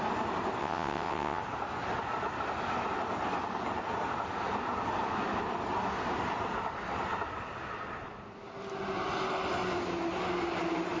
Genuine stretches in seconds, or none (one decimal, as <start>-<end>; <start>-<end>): 0.0-0.6; 1.4-11.0